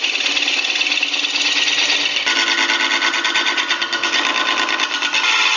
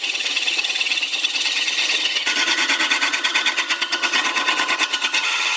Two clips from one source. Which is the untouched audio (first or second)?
first